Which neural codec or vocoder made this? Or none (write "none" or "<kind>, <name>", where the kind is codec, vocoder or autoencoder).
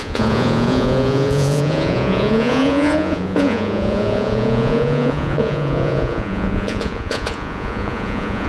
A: vocoder, Vocos